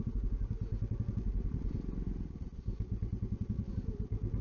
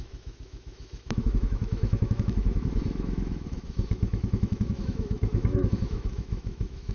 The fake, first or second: second